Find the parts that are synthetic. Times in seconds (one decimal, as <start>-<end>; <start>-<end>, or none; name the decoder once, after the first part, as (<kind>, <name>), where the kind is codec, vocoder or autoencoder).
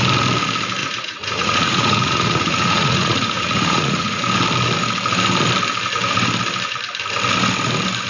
0.8-4.2 (vocoder, Vocos)